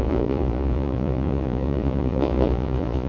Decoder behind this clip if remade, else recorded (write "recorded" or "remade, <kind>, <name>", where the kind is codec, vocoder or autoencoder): remade, vocoder, Vocos